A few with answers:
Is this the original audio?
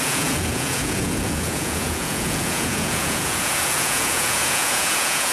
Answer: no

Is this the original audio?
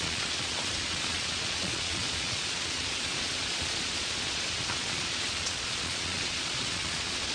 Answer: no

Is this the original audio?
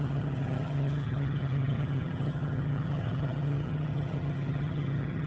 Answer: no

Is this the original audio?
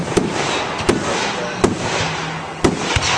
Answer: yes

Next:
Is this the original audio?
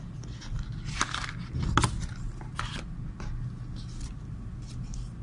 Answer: yes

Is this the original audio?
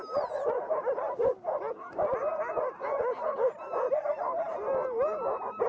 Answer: yes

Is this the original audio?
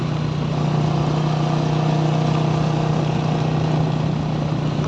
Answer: yes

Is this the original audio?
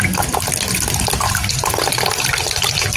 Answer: yes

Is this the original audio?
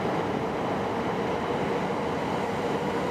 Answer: yes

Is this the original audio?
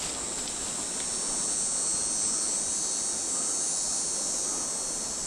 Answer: yes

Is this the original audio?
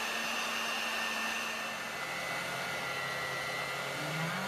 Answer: yes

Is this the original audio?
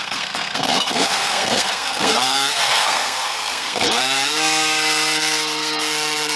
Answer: no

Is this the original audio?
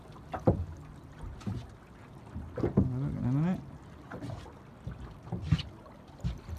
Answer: yes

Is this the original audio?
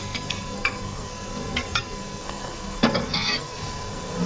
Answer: no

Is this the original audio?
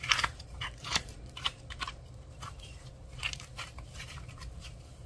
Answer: no